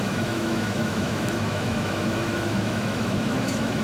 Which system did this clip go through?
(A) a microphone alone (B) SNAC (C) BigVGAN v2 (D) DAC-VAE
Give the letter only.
D